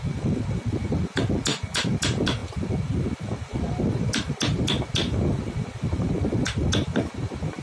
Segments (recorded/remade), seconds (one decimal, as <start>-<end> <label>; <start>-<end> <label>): 0.0-7.6 recorded